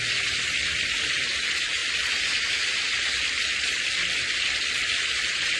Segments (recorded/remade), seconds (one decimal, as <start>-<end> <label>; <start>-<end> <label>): 0.0-5.6 recorded